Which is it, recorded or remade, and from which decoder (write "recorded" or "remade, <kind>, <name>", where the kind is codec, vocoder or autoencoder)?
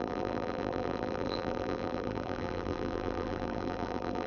remade, vocoder, BigVGAN v2